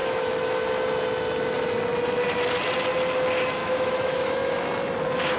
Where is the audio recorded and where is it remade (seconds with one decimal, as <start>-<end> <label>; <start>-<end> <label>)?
0.0-0.6 remade; 0.6-3.6 recorded; 3.6-4.7 remade; 4.7-5.4 recorded